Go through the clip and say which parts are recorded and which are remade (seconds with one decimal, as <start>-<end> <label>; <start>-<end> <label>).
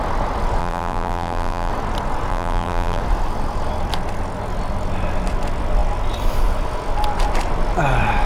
0.0-0.6 recorded; 0.6-1.7 remade; 1.7-2.3 recorded; 2.3-3.0 remade; 3.0-8.3 recorded